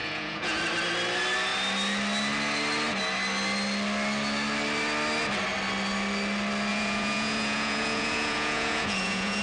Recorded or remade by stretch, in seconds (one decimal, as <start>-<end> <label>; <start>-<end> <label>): 0.0-0.6 remade; 0.6-6.7 recorded; 6.7-9.4 remade